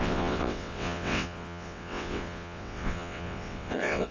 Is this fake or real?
fake